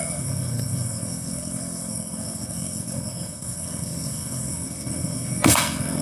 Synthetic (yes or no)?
yes